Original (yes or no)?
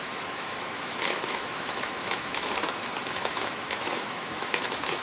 no